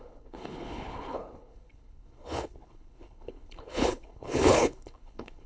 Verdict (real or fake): fake